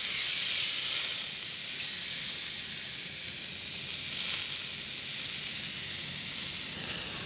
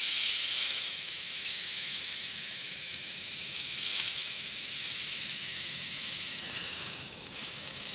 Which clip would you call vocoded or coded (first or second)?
second